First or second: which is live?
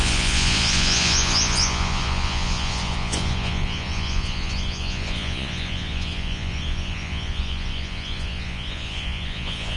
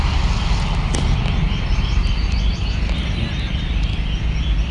second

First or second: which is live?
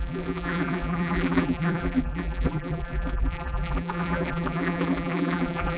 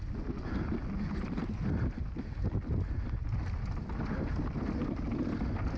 second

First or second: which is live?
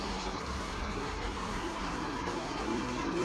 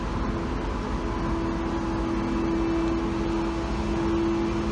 second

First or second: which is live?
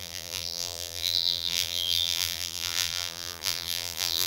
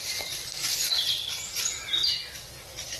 second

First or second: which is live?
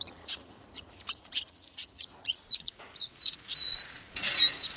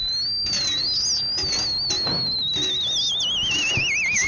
second